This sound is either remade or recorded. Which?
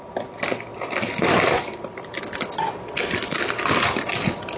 recorded